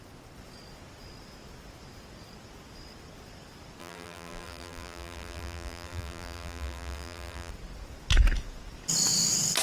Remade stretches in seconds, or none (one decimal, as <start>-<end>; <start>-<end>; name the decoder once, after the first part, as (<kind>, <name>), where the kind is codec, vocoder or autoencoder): 3.8-7.5 (vocoder, BigVGAN v2)